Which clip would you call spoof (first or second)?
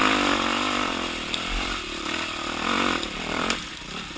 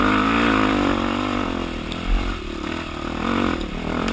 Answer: first